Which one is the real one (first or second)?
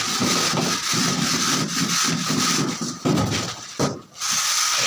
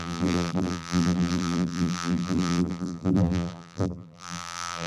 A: first